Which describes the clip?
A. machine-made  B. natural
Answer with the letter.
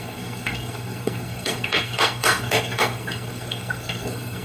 A